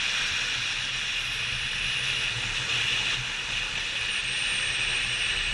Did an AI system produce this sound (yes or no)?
no